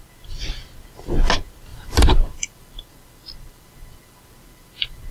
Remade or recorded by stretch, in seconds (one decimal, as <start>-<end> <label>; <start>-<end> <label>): 0.0-1.7 recorded; 1.7-5.1 remade